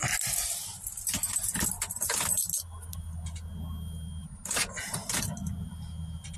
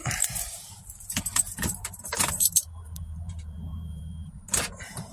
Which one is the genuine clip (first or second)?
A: first